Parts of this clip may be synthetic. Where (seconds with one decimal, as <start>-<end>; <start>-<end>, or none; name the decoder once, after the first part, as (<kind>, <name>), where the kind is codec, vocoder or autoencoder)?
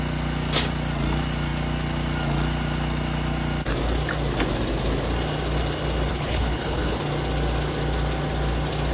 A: 6.1-7.0 (codec, HILCodec)